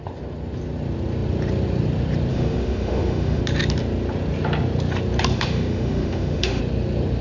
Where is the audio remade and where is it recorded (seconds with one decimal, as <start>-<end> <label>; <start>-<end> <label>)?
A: 0.0-2.3 recorded; 2.3-3.4 remade; 3.4-5.3 recorded; 5.3-6.6 remade; 6.6-7.2 recorded